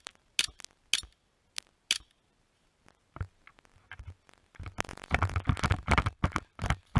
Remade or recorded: recorded